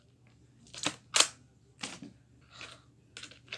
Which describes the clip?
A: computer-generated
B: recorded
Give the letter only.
B